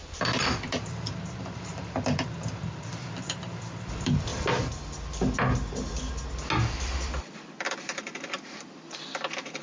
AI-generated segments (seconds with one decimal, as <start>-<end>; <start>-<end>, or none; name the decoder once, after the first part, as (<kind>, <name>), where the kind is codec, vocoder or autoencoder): 0.0-4.3 (vocoder, BigVGAN v2); 7.4-9.6